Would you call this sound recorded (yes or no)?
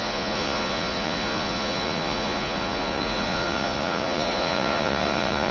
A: no